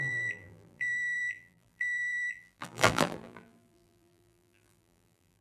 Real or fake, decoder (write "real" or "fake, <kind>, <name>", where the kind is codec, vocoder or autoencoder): fake, vocoder, BigVGAN v2